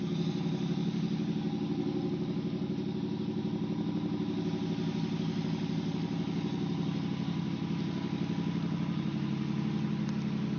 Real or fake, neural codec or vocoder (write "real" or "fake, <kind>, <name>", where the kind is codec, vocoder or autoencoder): real